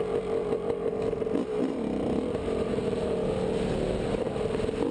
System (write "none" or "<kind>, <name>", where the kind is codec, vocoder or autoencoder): vocoder, BigVGAN v2